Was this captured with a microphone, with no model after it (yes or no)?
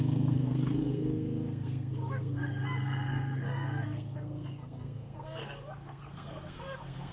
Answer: no